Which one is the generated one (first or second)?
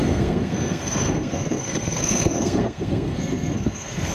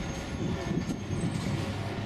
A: first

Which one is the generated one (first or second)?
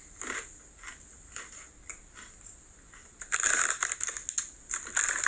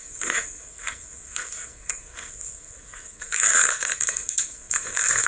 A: second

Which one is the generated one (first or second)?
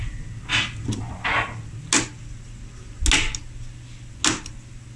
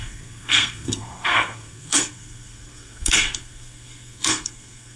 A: second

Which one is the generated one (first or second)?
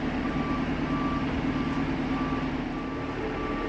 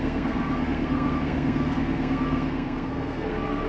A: second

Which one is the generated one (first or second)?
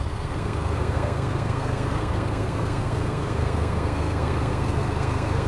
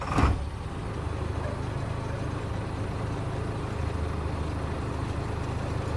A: first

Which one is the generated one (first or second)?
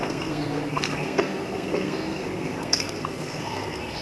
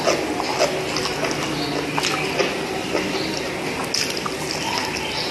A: first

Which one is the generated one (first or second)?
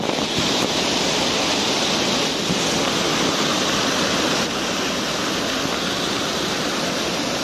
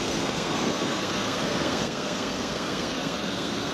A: second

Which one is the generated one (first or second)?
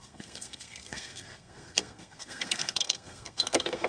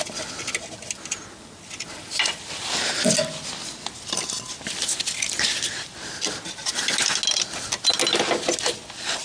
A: first